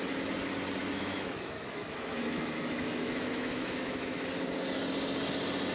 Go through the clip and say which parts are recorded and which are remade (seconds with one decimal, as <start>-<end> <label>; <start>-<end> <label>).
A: 0.0-0.8 recorded; 0.8-4.2 remade; 4.2-5.7 recorded